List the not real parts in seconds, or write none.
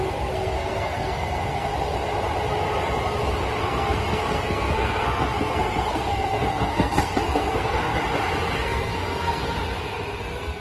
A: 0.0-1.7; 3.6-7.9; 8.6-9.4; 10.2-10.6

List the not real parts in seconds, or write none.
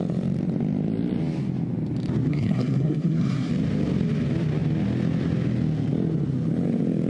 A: 2.3-3.5